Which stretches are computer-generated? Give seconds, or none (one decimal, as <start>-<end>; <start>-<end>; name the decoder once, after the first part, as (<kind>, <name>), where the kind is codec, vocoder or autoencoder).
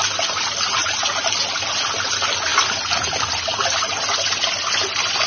none